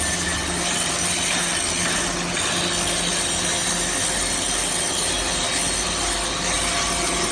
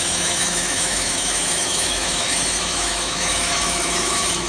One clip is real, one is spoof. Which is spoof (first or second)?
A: second